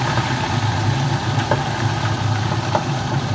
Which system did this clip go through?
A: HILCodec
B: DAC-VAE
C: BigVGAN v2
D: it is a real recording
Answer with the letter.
C